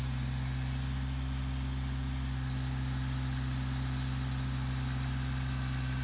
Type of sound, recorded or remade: recorded